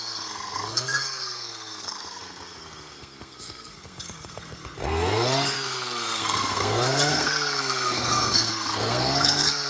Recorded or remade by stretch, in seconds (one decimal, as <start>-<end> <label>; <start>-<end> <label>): 0.0-9.7 remade